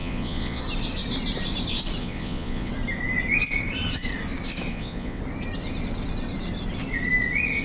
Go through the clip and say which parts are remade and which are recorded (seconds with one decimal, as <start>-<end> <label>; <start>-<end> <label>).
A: 0.0-0.6 remade; 0.6-2.0 recorded; 2.0-2.7 remade; 2.7-4.7 recorded; 4.7-5.2 remade; 5.2-7.6 recorded